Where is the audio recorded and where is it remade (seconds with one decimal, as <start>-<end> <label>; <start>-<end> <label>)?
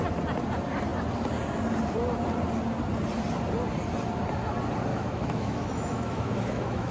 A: 0.0-4.9 recorded; 4.9-6.9 remade